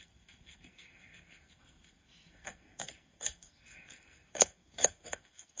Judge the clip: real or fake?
fake